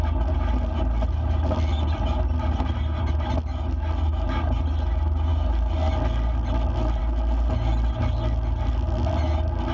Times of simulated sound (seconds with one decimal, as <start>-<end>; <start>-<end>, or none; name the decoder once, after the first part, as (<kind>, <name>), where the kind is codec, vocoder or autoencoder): none